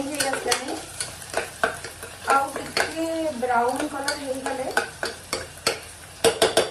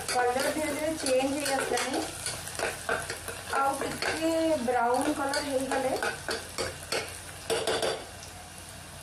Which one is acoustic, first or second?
second